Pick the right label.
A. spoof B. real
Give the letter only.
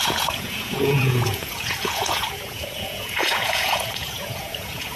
A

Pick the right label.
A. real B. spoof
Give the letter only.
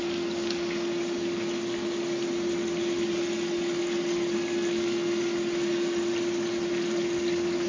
A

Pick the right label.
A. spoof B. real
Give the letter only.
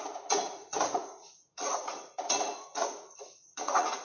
A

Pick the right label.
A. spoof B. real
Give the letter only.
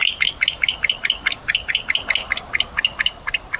B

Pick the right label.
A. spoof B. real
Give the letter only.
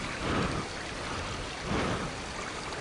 B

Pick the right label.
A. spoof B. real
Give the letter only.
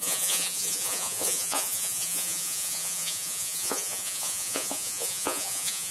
A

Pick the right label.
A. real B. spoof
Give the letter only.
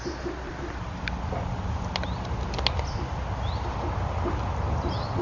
A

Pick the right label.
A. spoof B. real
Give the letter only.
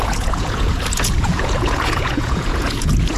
A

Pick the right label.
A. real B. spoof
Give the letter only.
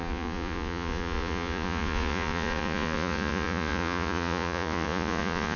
B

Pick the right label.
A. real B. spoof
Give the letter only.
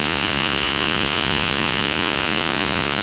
B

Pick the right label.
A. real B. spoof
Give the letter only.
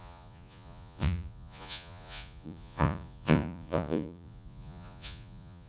B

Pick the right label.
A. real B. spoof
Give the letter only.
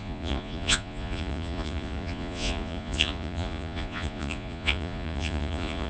B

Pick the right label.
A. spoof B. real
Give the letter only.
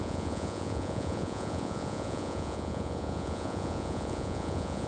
A